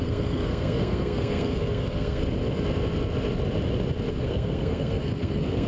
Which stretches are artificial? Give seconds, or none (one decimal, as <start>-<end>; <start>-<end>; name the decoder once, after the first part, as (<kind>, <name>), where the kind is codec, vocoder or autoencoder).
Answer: 0.0-2.2 (codec, SNAC); 4.1-5.7